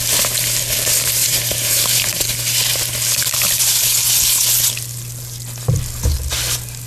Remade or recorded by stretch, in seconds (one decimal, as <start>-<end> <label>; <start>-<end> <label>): 0.0-1.2 recorded; 1.2-2.3 remade; 2.3-6.9 recorded